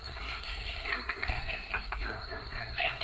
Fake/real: fake